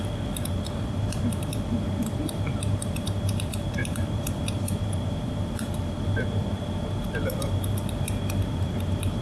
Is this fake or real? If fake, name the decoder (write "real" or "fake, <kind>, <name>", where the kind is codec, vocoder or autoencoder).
fake, vocoder, BigVGAN v2